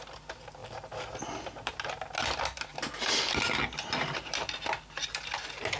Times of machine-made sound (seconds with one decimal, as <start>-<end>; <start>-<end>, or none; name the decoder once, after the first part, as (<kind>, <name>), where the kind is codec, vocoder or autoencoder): none